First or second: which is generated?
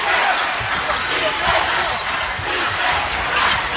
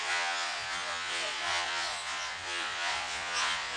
second